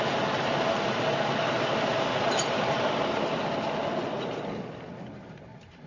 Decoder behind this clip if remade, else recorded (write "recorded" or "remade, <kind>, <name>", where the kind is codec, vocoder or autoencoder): recorded